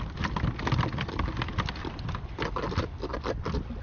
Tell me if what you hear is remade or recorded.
recorded